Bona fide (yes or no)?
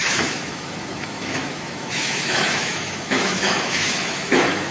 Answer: no